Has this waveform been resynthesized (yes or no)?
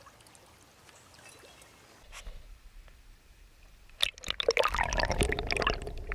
no